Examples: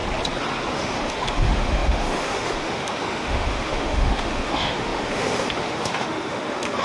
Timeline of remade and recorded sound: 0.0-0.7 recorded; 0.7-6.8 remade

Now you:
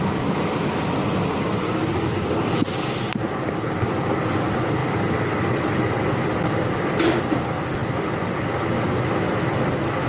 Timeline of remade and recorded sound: 0.0-10.1 recorded

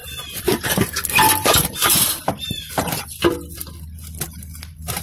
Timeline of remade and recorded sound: 0.0-3.0 remade; 3.0-5.0 recorded

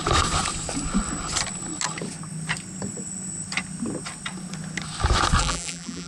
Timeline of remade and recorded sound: 0.0-5.4 recorded; 5.4-6.1 remade